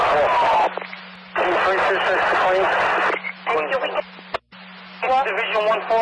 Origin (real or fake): real